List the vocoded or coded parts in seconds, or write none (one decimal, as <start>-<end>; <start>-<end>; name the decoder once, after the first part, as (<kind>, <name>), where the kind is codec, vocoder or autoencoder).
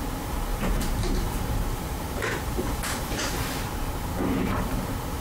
0.5-3.2 (vocoder, BigVGAN v2)